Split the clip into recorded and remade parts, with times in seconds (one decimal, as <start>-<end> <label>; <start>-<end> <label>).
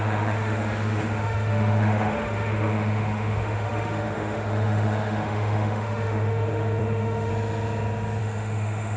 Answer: 0.0-7.3 remade; 7.3-8.2 recorded; 8.2-9.0 remade